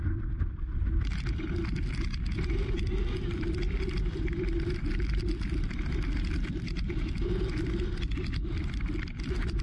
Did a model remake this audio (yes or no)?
yes